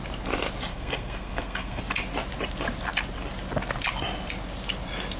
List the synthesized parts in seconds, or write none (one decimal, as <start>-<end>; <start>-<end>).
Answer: 0.7-1.8